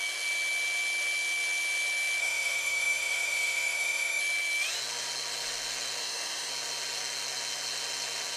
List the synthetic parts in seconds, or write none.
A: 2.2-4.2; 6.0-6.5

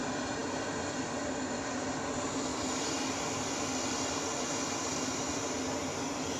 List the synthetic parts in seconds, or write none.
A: 0.0-2.5

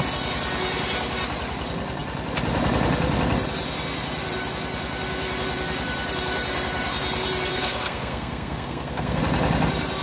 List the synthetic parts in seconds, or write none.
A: 7.5-9.2

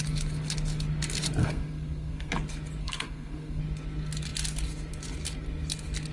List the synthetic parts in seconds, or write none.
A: 1.4-2.3; 2.8-3.6